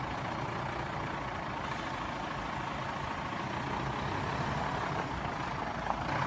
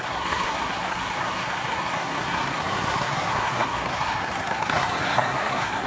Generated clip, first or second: second